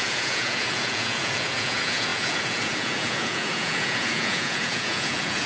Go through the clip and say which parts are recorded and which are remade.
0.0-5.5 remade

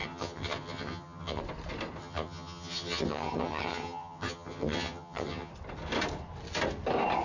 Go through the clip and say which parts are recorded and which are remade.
0.0-1.4 remade; 1.4-2.0 recorded; 2.0-5.5 remade; 5.5-7.2 recorded